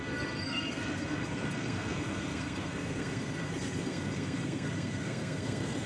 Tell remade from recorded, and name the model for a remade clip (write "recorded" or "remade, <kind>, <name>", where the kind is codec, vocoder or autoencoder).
remade, codec, SNAC